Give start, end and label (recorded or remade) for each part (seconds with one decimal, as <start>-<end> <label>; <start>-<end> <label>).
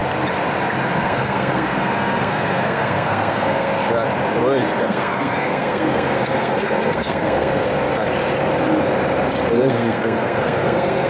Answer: 0.0-1.0 recorded; 1.0-3.7 remade; 3.7-4.8 recorded; 4.8-7.7 remade; 7.7-9.5 recorded; 9.5-11.1 remade